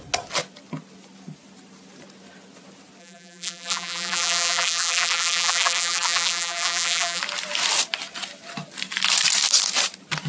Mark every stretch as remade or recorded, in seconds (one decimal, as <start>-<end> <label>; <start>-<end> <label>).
0.0-3.0 recorded; 3.0-7.2 remade; 7.2-10.3 recorded